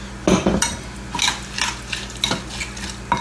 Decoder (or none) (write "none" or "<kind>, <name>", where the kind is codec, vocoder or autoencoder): none